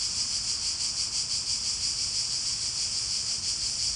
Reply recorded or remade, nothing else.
recorded